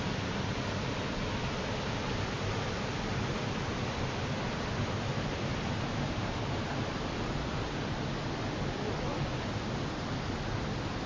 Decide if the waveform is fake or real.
real